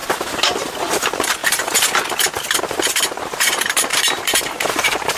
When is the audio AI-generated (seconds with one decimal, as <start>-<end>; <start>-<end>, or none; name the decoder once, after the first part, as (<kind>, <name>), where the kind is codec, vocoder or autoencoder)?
0.9-1.4 (vocoder, BigVGAN v2); 2.9-5.2